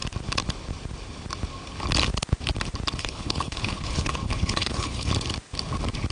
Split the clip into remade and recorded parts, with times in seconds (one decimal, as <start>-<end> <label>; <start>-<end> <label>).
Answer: 0.0-3.0 recorded; 3.0-5.1 remade; 5.1-6.1 recorded